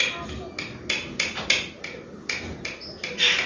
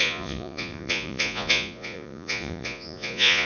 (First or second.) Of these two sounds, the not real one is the second